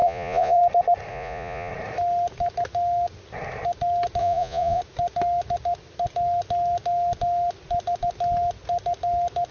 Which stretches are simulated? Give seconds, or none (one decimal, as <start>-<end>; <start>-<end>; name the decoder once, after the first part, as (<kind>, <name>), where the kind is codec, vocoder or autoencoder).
0.0-0.6 (vocoder, Vocos); 1.1-1.7; 4.2-4.8